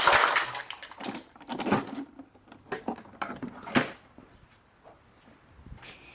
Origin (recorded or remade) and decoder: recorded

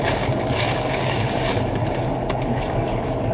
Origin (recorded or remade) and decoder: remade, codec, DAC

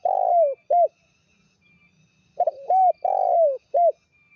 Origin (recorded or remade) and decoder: recorded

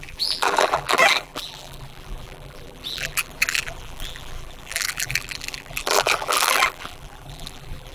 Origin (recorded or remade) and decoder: remade, vocoder, BigVGAN v2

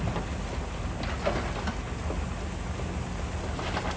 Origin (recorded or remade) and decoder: recorded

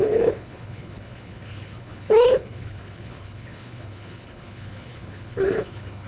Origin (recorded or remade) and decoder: remade, codec, HILCodec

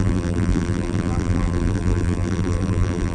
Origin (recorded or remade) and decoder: remade, vocoder, BigVGAN v2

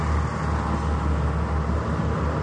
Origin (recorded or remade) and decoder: recorded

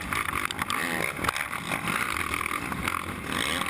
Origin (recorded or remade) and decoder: recorded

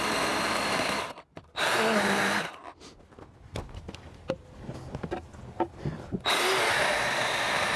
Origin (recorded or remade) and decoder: recorded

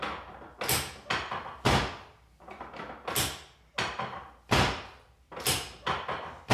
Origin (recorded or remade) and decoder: recorded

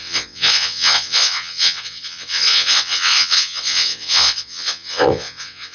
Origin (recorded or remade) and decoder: remade, vocoder, WaveNeXt